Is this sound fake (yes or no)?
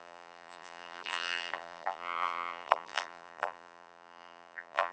yes